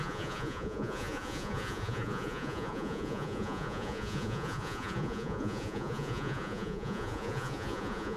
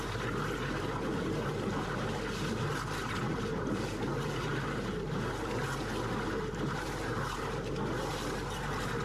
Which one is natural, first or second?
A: second